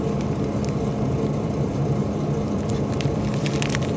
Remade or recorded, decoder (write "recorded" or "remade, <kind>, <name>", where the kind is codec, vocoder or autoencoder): remade, vocoder, BigVGAN v2